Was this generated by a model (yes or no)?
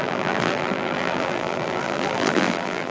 yes